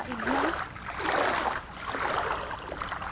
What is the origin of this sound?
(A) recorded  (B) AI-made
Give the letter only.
A